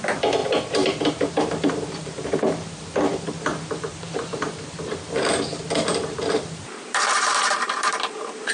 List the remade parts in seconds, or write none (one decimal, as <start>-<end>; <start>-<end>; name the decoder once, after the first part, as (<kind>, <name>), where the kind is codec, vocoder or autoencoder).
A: 0.4-2.4 (vocoder, BigVGAN v2); 3.5-5.4; 5.9-8.5